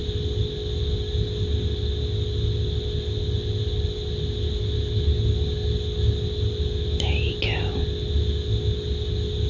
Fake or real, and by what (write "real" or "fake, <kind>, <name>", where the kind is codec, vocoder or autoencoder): real